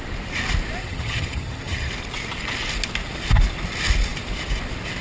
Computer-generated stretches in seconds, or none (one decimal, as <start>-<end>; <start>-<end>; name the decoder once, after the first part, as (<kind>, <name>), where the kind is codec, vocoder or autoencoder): 0.8-1.9 (vocoder, HiFi-GAN)